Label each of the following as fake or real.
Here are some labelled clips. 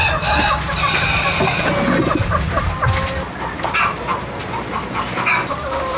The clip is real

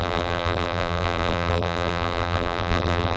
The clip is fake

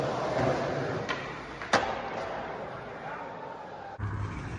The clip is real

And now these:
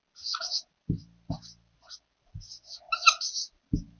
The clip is real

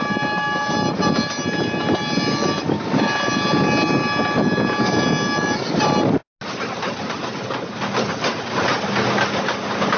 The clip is real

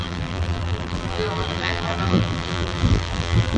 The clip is fake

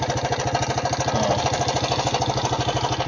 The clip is real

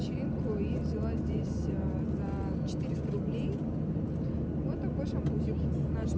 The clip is real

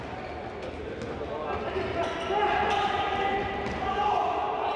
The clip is real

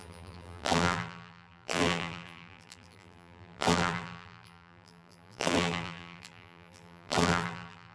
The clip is fake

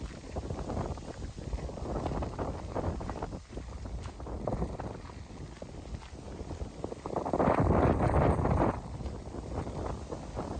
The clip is fake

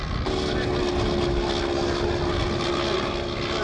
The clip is real